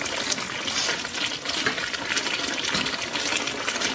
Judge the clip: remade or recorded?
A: recorded